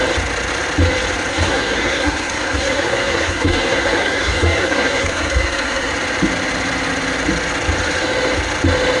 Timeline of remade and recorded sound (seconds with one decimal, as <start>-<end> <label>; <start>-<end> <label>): 0.0-1.3 recorded; 1.3-5.9 remade; 5.9-9.0 recorded